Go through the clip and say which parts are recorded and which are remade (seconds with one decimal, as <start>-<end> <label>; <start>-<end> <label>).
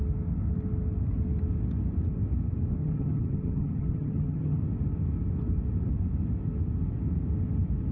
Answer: 0.0-2.8 recorded; 2.8-4.6 remade; 4.6-7.9 recorded